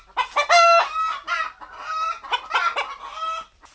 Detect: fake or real real